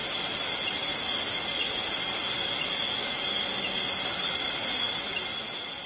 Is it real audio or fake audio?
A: real